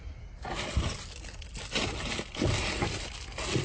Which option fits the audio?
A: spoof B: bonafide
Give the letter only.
B